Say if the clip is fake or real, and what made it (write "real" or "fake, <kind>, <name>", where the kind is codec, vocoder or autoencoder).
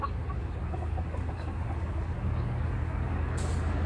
fake, codec, DAC